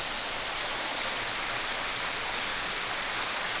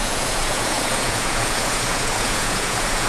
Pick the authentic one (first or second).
first